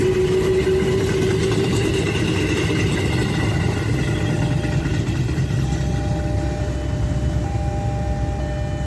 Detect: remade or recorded recorded